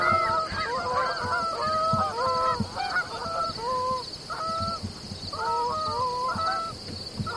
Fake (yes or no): no